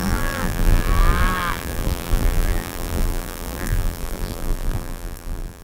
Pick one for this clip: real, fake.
fake